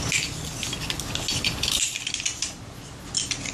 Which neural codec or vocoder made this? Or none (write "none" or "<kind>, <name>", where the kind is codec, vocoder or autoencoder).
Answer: none